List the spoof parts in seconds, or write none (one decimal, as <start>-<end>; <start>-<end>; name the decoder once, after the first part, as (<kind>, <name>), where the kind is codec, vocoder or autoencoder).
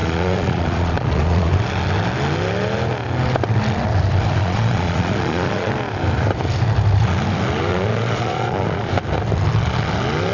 0.0-1.5 (vocoder, Vocos); 4.4-5.7; 7.7-8.9